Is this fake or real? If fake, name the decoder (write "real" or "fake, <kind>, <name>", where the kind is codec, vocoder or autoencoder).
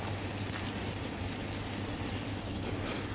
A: real